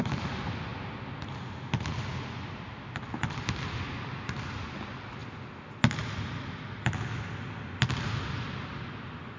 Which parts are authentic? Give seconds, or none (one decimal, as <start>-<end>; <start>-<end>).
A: 0.0-9.4